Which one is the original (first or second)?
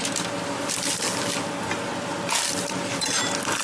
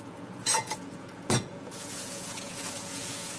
first